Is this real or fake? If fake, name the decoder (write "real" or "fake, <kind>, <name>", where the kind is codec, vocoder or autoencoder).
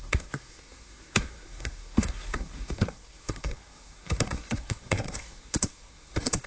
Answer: fake, codec, SNAC